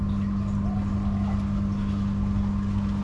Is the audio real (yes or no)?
yes